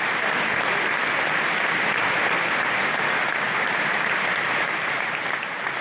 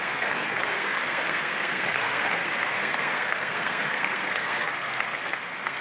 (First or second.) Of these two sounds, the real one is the first